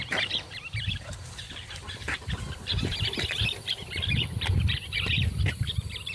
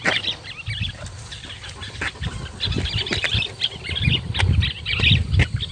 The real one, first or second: second